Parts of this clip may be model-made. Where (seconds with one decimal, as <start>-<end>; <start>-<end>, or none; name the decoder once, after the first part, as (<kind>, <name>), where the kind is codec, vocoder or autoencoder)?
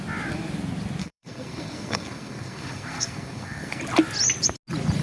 1.0-3.8 (codec, SNAC)